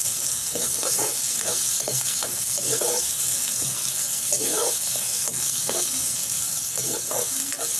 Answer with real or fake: fake